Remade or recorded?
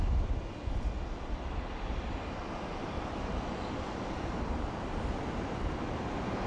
remade